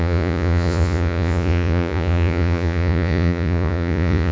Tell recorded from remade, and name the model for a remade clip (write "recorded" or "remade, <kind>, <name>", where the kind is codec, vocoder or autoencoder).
remade, vocoder, Vocos